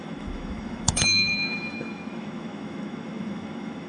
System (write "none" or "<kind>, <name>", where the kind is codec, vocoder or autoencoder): autoencoder, DAC-VAE